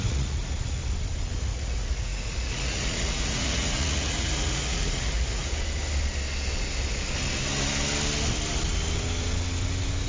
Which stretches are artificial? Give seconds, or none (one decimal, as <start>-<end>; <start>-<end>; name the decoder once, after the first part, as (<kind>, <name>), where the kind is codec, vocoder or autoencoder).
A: 0.0-0.8 (vocoder, Vocos); 1.4-5.5